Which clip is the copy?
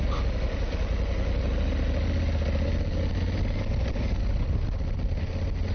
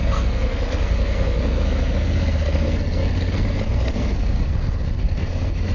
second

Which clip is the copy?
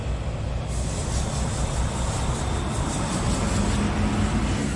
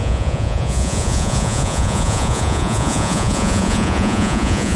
second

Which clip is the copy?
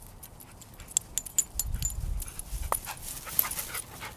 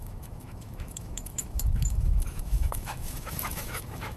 second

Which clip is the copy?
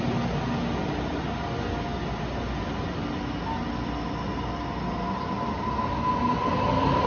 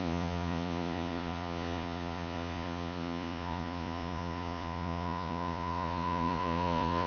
second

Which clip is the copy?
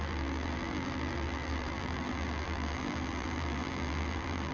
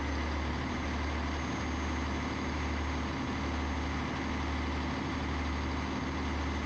first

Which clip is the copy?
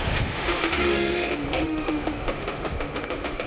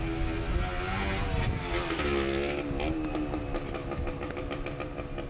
first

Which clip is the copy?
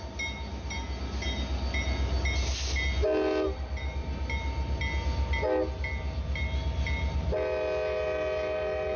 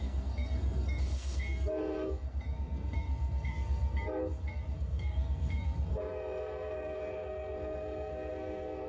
second